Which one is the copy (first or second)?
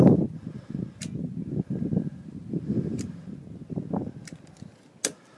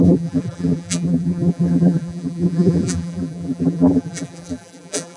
second